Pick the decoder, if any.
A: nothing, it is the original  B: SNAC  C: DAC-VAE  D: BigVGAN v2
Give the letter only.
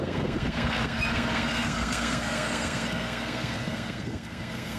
B